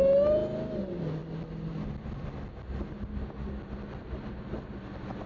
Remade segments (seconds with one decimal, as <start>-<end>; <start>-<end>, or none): none